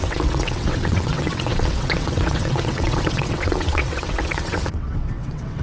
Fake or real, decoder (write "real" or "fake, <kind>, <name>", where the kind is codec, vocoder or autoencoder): fake, vocoder, WaveNeXt